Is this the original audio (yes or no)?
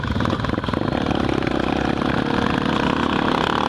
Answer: yes